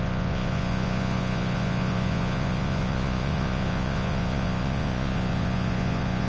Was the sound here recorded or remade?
remade